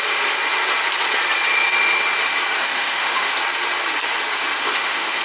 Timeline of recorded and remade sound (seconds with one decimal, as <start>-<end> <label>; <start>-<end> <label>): 0.0-2.6 recorded; 2.6-3.3 remade; 3.3-4.6 recorded; 4.6-5.2 remade